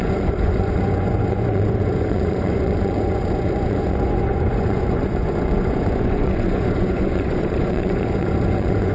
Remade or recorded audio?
remade